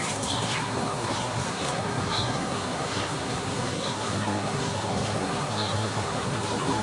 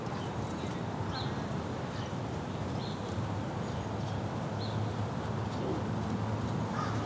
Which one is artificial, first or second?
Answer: first